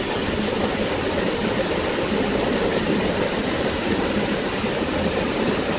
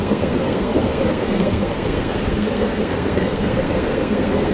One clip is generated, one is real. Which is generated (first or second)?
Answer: second